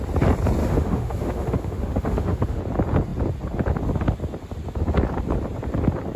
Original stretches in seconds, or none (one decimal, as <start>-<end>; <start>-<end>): 0.0-0.6; 2.6-6.2